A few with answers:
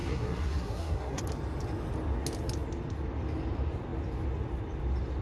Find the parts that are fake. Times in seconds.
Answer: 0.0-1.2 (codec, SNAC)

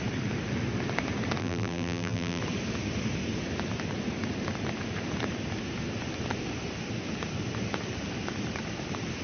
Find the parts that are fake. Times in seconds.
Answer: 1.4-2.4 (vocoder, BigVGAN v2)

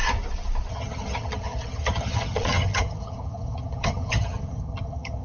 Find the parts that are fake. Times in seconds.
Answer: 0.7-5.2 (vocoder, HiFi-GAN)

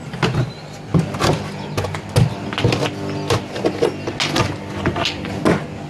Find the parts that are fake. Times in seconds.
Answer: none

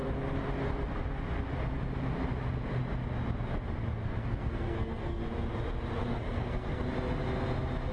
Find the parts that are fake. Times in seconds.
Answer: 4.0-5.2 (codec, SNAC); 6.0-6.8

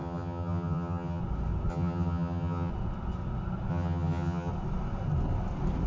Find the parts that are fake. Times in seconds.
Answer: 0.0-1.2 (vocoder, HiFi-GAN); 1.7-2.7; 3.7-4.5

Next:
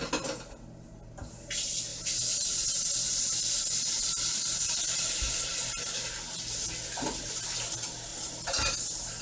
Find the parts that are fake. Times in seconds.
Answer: 1.9-5.9 (vocoder, BigVGAN v2); 8.1-8.7

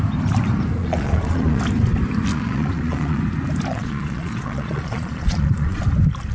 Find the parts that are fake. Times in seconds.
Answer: 0.8-1.6 (vocoder, Vocos); 2.3-3.2; 3.7-5.8